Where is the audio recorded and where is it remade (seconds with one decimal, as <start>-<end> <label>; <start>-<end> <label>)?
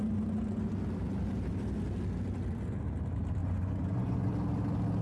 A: 0.0-3.4 recorded; 3.4-4.3 remade; 4.3-5.0 recorded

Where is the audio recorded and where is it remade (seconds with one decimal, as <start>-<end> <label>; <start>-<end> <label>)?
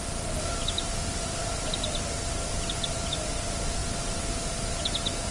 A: 0.0-5.3 recorded